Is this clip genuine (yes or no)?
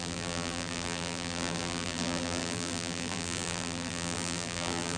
no